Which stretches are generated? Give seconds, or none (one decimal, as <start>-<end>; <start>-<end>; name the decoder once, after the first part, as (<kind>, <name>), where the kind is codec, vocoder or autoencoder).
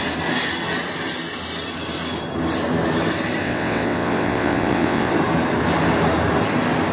3.4-5.1 (vocoder, WaveNeXt)